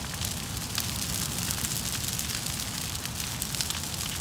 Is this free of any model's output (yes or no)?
yes